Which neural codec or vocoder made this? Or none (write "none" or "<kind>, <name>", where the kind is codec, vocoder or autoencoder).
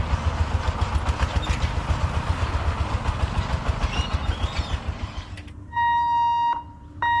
none